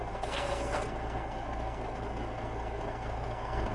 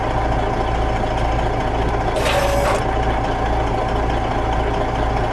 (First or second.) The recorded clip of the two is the second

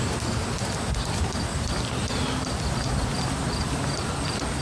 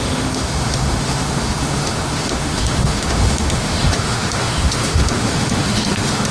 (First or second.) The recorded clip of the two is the first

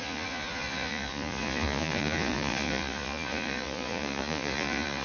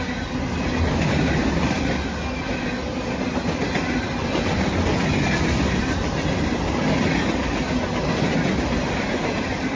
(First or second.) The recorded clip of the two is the second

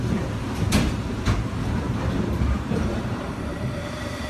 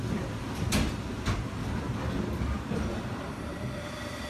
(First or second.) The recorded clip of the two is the second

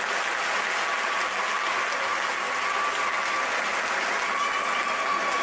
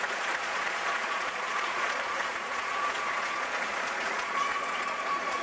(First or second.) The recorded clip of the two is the first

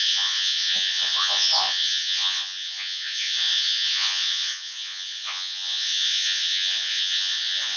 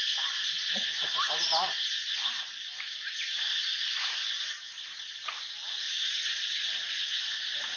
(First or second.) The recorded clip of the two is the second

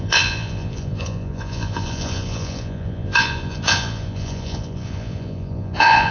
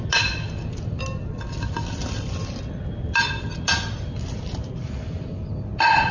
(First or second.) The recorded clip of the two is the second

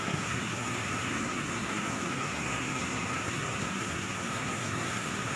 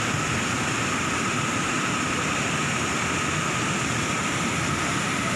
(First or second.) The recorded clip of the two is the second